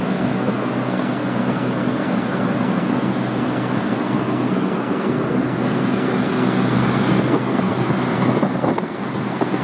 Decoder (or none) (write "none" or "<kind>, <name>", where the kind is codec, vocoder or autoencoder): codec, SNAC